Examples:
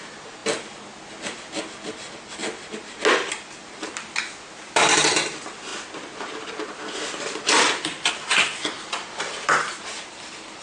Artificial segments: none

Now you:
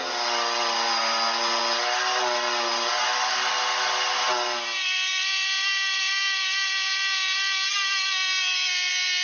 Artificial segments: none

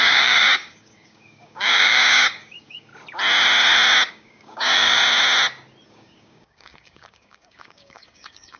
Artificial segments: 0.0-2.9; 4.1-5.0; 5.9-8.6

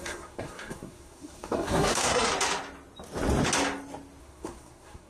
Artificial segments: 0.0-2.3; 4.2-5.1

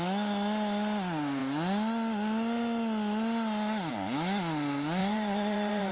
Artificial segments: 5.0-5.9